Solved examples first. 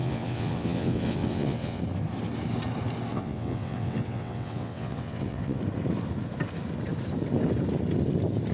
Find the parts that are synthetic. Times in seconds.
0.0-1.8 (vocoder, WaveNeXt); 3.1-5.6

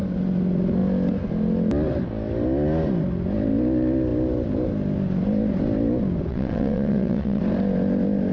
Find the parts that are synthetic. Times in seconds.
6.3-7.4 (vocoder, WaveNeXt)

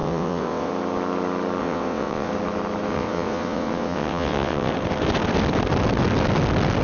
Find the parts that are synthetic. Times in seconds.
0.0-0.7 (vocoder, WaveNeXt); 1.6-2.3; 2.9-4.7

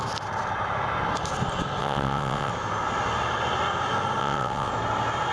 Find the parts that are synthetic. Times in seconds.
1.8-2.5 (vocoder, WaveNeXt); 4.2-4.7

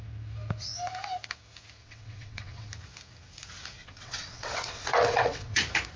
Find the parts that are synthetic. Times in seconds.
1.8-2.7 (vocoder, WaveNeXt); 3.8-5.6